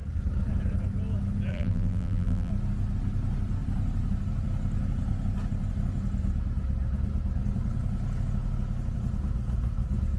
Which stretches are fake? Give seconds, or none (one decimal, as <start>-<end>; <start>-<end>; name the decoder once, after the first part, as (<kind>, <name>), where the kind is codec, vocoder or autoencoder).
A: 1.5-2.5 (vocoder, BigVGAN v2)